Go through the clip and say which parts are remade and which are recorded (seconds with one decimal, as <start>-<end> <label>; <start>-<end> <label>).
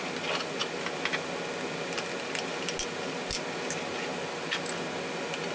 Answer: 0.0-5.5 recorded